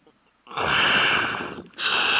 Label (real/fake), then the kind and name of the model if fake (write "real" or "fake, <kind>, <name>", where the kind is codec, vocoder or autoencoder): real